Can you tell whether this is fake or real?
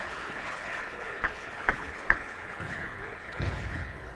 fake